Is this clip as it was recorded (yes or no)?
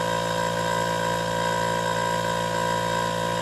yes